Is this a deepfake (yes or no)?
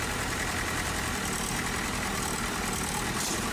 no